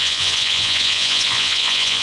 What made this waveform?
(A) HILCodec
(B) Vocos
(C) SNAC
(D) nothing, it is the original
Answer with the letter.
B